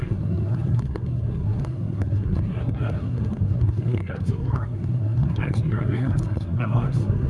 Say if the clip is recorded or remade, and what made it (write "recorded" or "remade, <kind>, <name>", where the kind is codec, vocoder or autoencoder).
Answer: remade, codec, SNAC